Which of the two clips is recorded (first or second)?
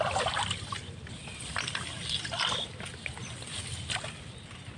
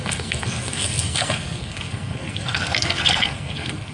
first